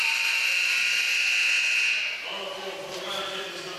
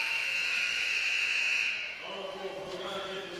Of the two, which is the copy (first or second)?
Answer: second